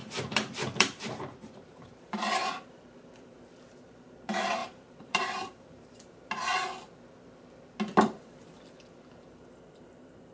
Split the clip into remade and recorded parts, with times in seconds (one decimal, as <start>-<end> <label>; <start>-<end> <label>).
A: 0.0-2.5 remade; 2.5-4.6 recorded; 4.6-6.0 remade; 6.0-10.3 recorded